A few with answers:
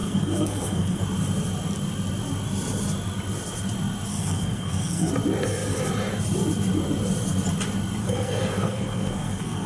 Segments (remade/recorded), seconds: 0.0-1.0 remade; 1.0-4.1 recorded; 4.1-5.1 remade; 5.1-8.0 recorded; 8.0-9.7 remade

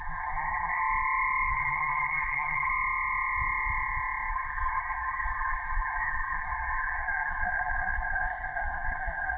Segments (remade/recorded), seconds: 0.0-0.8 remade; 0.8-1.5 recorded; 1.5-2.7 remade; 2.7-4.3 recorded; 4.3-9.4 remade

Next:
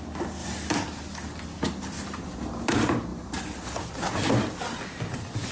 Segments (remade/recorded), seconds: 0.0-5.5 recorded